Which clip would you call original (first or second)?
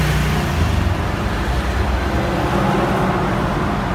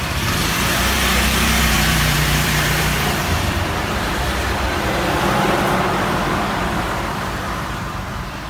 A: first